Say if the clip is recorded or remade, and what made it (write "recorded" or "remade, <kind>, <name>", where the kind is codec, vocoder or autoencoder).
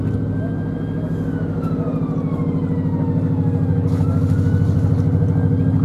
recorded